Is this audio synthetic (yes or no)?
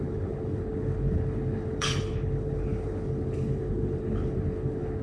yes